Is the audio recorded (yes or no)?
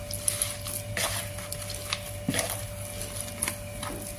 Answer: yes